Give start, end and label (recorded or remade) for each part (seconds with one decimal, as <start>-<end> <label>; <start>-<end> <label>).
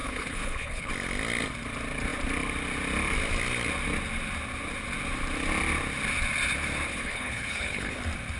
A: 0.0-0.9 remade; 0.9-6.9 recorded; 6.9-8.0 remade; 8.0-8.4 recorded